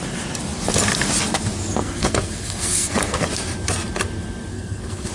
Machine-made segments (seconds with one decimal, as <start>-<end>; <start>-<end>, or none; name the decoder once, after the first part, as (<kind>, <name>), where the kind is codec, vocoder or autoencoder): 1.8-3.3 (codec, SNAC); 4.5-5.1

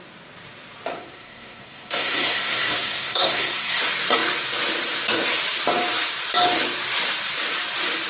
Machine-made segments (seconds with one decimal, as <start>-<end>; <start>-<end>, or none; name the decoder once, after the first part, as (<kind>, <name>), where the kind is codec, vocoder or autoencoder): 0.9-3.8 (codec, SNAC)